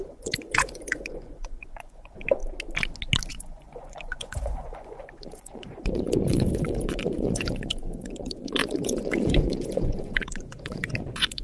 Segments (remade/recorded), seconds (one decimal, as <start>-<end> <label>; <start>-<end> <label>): 0.0-2.4 remade; 2.4-3.3 recorded; 3.3-11.4 remade